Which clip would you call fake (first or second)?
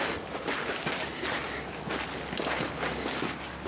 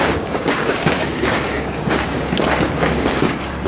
second